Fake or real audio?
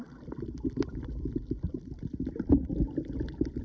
fake